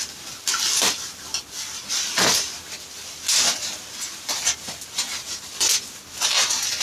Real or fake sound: real